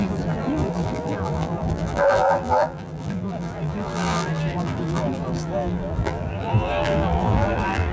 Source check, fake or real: fake